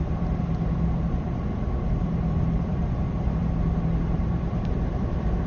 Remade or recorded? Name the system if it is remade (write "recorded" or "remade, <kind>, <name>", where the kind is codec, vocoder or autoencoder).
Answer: remade, vocoder, BigVGAN v2